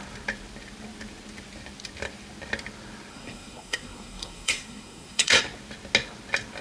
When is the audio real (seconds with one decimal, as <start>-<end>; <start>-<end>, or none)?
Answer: 0.0-3.1; 5.4-6.6